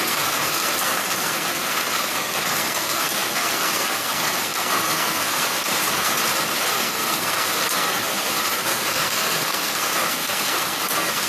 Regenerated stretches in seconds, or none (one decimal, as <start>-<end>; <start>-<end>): 0.0-6.2; 6.7-11.3